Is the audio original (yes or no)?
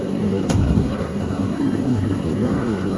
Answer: no